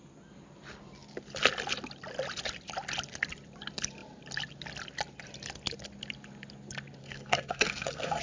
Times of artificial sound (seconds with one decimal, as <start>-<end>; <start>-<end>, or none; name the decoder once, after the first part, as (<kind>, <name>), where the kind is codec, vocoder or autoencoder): 7.0-8.2 (codec, SNAC)

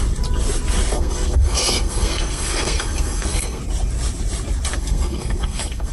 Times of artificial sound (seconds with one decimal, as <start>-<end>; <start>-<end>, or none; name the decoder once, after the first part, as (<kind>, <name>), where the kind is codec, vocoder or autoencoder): 0.9-3.6 (codec, SNAC); 4.7-5.9